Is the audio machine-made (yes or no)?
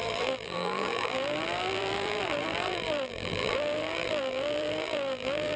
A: yes